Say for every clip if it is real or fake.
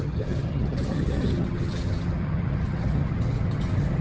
fake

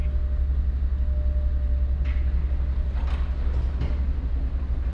real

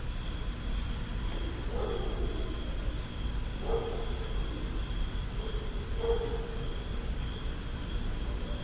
real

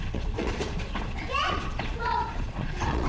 fake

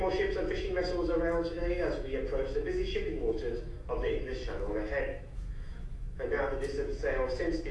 fake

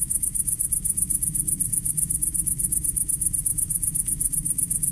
fake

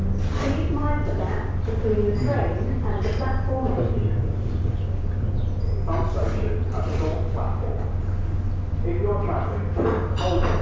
real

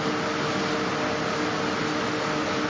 real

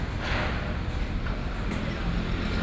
real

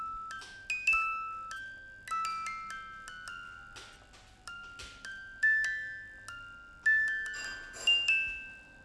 real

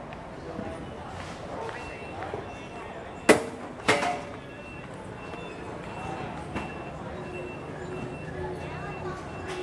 real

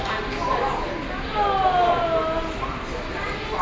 real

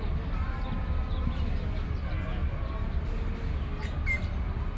real